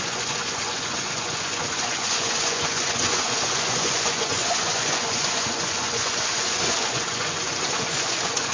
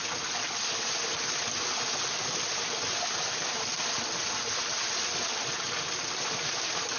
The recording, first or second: second